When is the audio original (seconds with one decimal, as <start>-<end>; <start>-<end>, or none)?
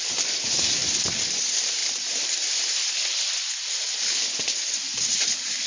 0.0-5.7